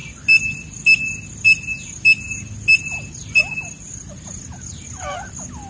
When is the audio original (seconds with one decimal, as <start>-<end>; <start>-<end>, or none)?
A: 0.0-5.7